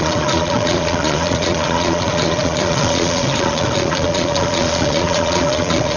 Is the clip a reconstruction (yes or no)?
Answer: yes